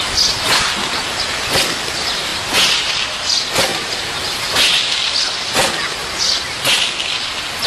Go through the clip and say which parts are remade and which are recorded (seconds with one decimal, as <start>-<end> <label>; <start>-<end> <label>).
0.0-3.7 recorded; 3.7-4.4 remade; 4.4-7.7 recorded